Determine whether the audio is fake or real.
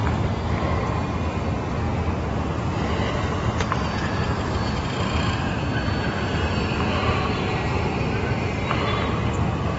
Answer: real